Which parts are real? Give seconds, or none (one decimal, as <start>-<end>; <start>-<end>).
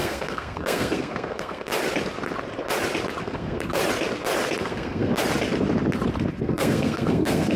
1.7-3.2; 3.8-4.6; 5.1-6.4